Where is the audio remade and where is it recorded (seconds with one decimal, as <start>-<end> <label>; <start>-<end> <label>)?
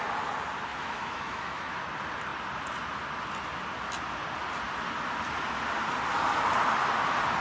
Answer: 0.0-0.7 recorded; 0.7-1.8 remade; 1.8-7.4 recorded